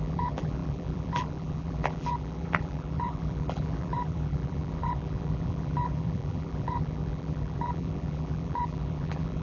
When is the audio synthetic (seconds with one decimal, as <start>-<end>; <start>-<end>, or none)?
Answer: 0.0-9.4